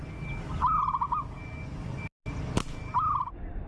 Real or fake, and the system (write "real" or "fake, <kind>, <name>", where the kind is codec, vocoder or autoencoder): real